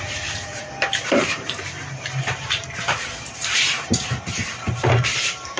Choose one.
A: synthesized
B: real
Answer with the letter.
A